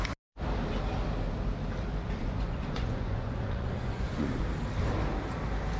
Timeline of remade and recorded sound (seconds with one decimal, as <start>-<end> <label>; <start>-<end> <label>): 0.0-2.2 recorded; 2.2-4.4 remade; 4.4-5.8 recorded

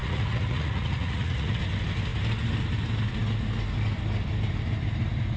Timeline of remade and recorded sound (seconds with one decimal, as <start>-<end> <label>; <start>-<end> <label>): 0.0-1.6 remade; 1.6-5.4 recorded

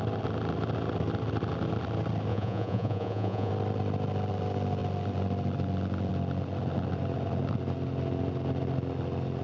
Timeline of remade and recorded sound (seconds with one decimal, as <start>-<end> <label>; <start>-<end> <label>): 0.0-2.3 recorded; 2.3-3.5 remade; 3.5-9.4 recorded